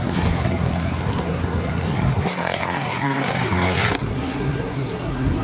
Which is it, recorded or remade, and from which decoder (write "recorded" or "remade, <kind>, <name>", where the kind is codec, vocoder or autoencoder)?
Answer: remade, codec, SNAC